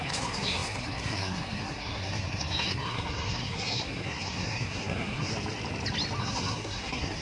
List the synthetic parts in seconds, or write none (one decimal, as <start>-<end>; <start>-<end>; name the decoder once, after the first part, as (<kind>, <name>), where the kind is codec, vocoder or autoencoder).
0.0-5.3 (codec, SNAC); 6.2-7.2